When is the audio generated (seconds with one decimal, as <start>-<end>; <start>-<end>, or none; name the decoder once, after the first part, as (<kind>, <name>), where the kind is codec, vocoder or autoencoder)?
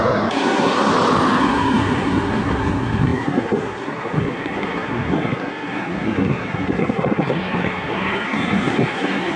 0.0-0.9 (codec, SNAC); 1.4-9.4